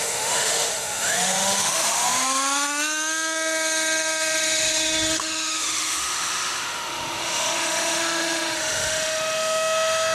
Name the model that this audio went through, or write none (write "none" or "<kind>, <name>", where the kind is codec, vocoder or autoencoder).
autoencoder, DAC-VAE